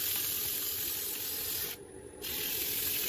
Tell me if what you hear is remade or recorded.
recorded